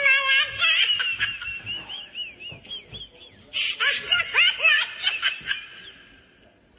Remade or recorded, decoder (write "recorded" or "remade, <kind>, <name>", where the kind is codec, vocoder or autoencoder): recorded